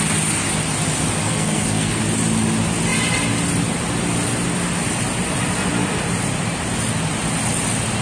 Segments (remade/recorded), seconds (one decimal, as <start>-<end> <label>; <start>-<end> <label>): 0.0-1.2 recorded; 1.2-2.0 remade; 2.0-8.0 recorded

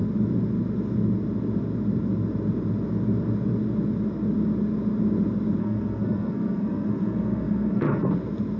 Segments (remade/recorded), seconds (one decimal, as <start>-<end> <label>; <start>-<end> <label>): 0.0-5.6 recorded; 5.6-8.1 remade; 8.1-8.6 recorded

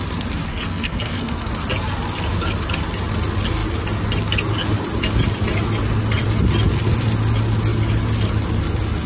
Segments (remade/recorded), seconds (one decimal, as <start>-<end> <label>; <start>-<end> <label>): 0.0-0.5 recorded; 0.5-1.5 remade; 1.5-9.1 recorded

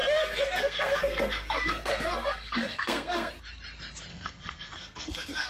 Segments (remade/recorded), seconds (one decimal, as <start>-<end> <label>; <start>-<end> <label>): 0.0-3.3 remade; 3.3-4.1 recorded; 4.1-5.5 remade

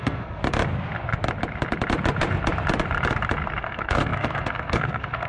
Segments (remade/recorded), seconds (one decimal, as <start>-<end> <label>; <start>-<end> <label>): 0.0-0.4 remade; 0.4-3.6 recorded; 3.6-5.3 remade

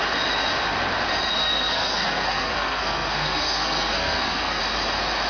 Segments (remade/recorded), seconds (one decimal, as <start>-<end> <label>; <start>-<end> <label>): 0.0-1.4 recorded; 1.4-4.6 remade; 4.6-5.3 recorded